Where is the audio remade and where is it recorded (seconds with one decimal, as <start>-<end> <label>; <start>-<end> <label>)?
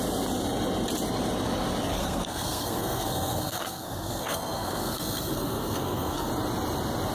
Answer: 0.0-2.0 recorded; 2.0-6.3 remade; 6.3-7.1 recorded